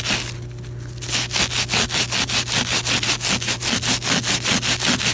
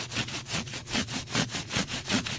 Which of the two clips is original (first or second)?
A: first